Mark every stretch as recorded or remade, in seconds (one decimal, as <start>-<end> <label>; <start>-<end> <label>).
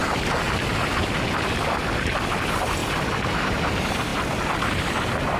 0.0-5.4 recorded